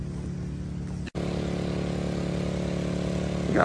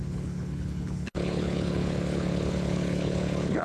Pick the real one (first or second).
first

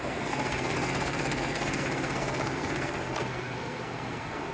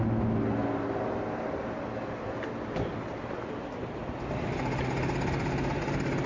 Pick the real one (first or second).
second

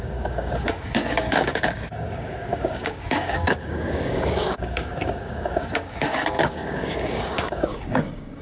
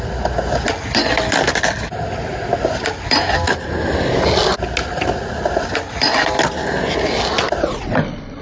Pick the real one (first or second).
second